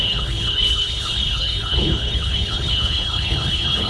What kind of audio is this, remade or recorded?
remade